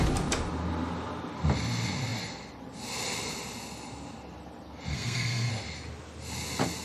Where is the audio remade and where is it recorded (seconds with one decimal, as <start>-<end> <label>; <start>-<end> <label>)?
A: 0.0-4.9 recorded; 4.9-5.5 remade; 5.5-6.8 recorded